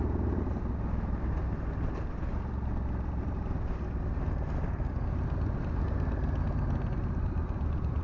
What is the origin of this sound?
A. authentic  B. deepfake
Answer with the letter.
A